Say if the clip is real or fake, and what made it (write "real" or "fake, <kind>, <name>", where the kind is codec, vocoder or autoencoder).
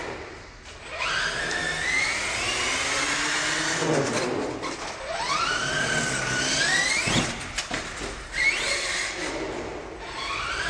real